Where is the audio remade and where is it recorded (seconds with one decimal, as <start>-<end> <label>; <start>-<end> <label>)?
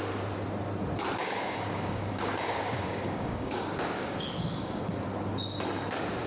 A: 0.0-1.2 recorded; 1.2-4.8 remade; 4.8-6.3 recorded